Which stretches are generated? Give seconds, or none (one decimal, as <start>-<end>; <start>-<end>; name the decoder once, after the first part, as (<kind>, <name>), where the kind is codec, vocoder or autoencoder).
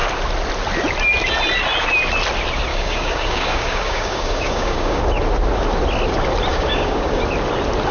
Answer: 2.7-5.0 (codec, DAC); 6.5-7.2